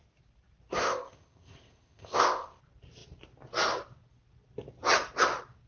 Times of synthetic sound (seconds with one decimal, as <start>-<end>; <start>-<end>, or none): 0.8-2.6